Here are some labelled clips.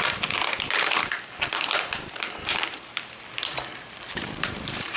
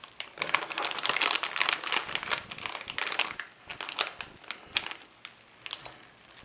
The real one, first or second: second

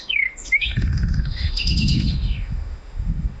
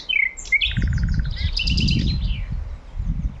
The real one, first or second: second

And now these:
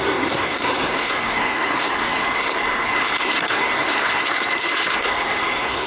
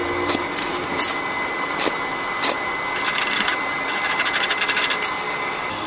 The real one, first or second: second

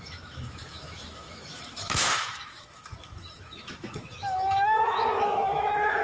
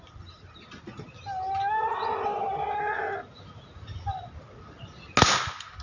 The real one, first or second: second